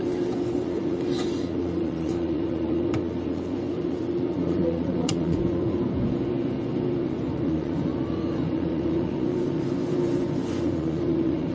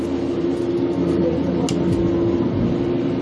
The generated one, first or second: first